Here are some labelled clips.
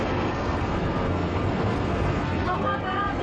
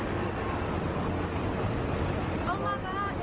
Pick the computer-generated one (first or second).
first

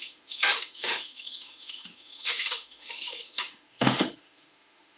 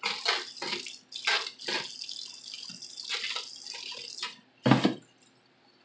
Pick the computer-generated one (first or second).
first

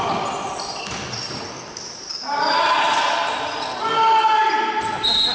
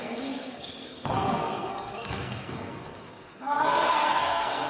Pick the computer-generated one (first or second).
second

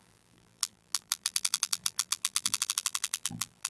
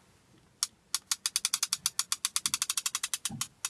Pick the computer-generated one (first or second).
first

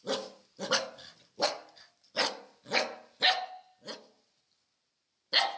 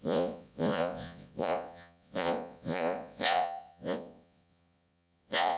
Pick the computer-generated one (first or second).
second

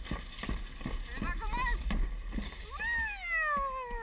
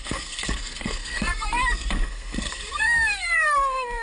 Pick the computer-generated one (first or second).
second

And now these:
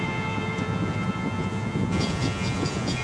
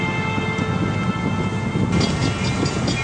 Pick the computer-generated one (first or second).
first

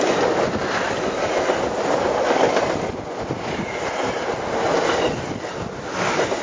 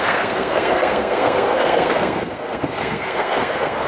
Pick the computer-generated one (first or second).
second